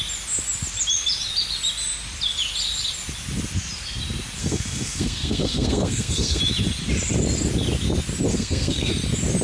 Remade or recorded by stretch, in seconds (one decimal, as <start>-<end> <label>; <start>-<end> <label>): 0.0-4.4 recorded; 4.4-6.4 remade; 6.4-8.3 recorded; 8.3-8.9 remade; 8.9-9.4 recorded